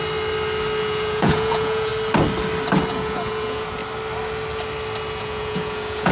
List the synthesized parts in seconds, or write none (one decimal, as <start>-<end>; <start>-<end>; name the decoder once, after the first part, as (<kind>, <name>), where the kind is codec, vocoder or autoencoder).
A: 0.8-1.9 (vocoder, Vocos); 2.9-3.8; 5.2-6.1